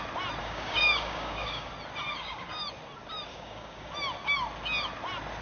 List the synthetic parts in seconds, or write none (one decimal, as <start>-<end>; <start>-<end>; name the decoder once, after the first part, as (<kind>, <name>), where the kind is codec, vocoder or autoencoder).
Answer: 0.4-1.7 (codec, DAC); 2.1-2.6; 3.3-3.9